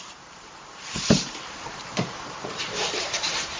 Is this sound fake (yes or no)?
yes